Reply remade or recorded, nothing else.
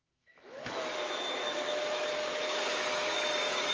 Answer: remade